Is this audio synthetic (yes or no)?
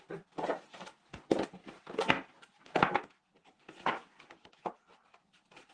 no